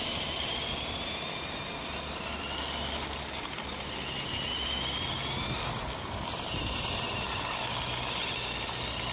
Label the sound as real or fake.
real